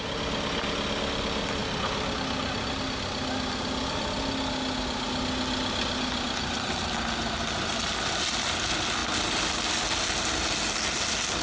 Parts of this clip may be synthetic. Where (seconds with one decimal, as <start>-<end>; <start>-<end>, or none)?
none